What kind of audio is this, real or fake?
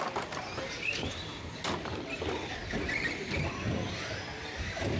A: real